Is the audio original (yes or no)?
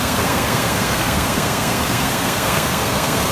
no